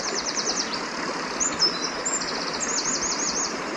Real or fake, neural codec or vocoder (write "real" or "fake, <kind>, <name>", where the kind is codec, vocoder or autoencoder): real